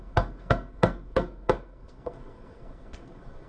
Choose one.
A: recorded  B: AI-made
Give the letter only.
B